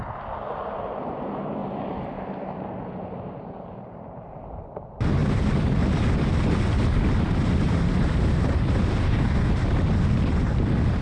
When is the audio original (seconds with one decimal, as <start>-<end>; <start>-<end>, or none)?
0.0-8.9; 9.5-11.0